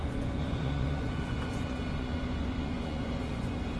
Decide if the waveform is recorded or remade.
remade